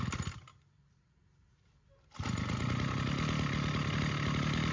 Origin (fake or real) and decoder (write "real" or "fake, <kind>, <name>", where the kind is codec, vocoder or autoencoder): real